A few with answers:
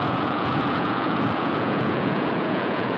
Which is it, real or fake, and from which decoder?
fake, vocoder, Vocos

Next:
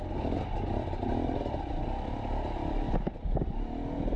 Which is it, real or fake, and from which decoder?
real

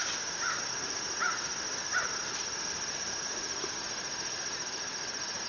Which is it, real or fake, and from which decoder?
real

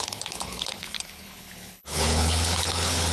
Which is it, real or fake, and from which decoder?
fake, codec, HILCodec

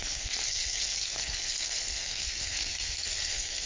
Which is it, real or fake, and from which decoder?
fake, codec, SNAC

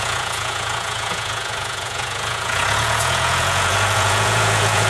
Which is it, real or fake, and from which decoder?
fake, vocoder, Vocos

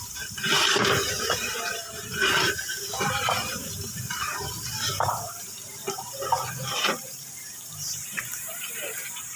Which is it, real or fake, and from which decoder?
fake, vocoder, BigVGAN v2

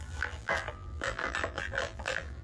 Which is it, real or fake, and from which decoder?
fake, vocoder, BigVGAN v2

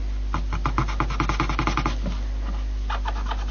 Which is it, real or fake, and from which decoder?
real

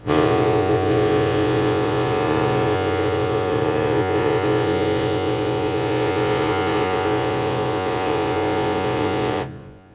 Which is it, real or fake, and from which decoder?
fake, vocoder, Vocos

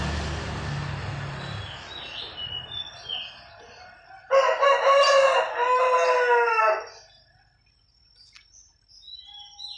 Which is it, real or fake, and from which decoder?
real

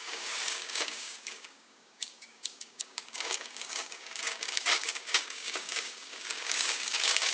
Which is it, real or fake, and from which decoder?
fake, codec, DAC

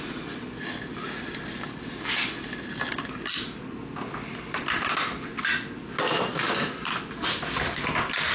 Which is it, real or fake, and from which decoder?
real